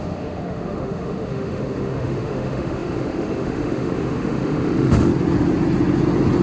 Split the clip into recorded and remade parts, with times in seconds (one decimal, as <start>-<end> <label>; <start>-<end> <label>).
0.0-5.1 remade; 5.1-6.4 recorded